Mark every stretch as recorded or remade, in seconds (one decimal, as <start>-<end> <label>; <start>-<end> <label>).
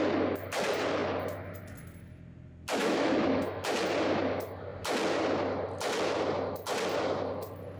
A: 0.0-2.8 recorded; 2.8-3.6 remade; 3.6-7.8 recorded